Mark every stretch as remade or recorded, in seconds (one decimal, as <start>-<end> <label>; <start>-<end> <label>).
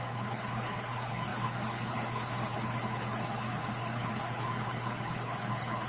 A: 0.0-5.9 remade